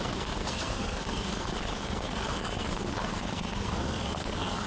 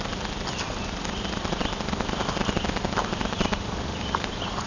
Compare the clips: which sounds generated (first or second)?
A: first